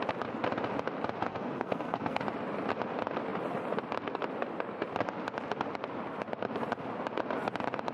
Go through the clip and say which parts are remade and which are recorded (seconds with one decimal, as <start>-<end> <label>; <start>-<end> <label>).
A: 0.0-1.3 recorded; 1.3-2.2 remade; 2.2-7.9 recorded